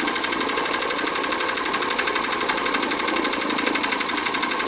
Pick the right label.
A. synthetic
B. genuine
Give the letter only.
B